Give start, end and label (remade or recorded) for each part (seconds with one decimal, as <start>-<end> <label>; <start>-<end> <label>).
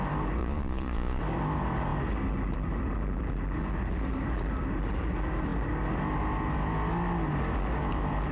0.0-0.4 recorded; 0.4-1.2 remade; 1.2-8.3 recorded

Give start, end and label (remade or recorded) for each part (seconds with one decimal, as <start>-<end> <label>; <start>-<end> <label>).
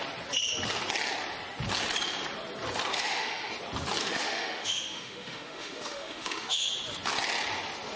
0.0-2.9 recorded; 2.9-3.5 remade; 3.5-4.0 recorded; 4.0-6.7 remade; 6.7-8.0 recorded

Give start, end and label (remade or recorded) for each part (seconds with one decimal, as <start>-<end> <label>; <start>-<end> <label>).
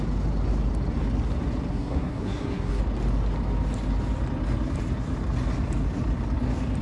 0.0-1.7 recorded; 1.7-2.8 remade; 2.8-6.8 recorded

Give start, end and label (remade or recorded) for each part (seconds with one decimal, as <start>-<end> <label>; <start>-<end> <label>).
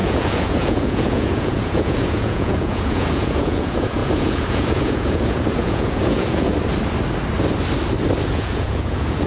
0.0-6.5 remade; 6.5-8.2 recorded; 8.2-9.3 remade